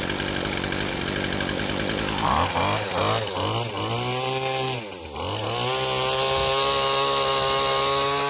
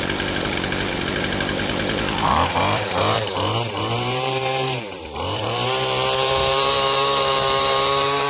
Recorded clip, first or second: first